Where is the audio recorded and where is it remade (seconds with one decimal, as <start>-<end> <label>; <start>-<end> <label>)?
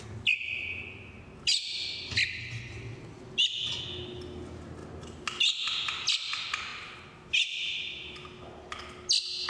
0.0-9.5 recorded